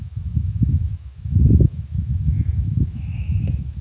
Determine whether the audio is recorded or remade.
remade